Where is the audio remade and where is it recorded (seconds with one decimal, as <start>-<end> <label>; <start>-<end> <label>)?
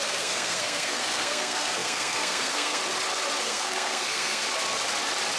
0.0-2.8 remade; 2.8-3.4 recorded; 3.4-4.4 remade; 4.4-5.4 recorded